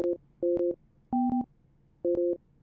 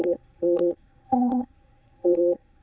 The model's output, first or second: second